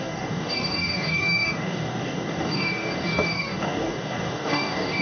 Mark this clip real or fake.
fake